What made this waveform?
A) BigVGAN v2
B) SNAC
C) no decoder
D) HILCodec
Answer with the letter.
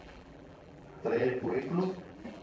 A